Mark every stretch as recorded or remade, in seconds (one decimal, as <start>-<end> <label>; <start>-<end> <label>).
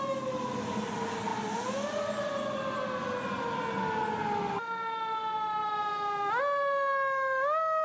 0.0-7.8 recorded